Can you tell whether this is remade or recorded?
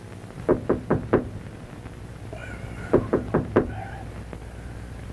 recorded